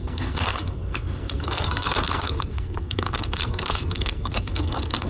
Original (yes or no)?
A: no